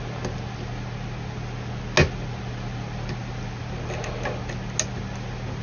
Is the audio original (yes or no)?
yes